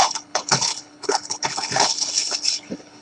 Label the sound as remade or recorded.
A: remade